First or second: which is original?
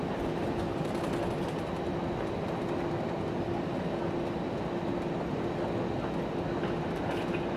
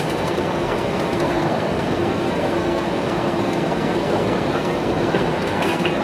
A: first